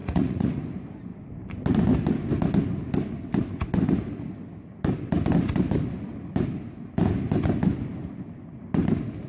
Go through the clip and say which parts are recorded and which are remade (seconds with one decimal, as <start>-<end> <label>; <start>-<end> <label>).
0.0-0.6 remade; 0.6-9.3 recorded